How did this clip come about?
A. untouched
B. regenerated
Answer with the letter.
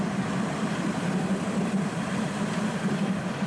B